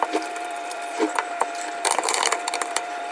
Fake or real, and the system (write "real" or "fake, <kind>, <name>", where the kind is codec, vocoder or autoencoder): fake, vocoder, BigVGAN v2